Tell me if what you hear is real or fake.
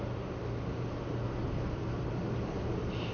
real